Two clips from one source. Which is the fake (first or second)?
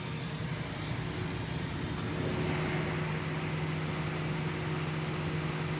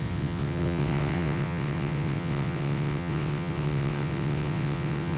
second